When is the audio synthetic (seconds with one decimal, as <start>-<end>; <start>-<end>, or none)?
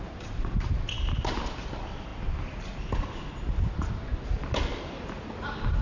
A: none